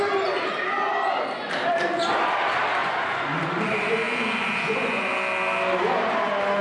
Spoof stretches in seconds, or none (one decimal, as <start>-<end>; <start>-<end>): 2.8-3.4; 4.4-5.1